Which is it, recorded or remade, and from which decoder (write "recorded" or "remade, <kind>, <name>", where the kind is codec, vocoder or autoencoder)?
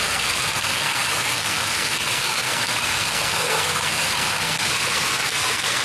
remade, codec, SNAC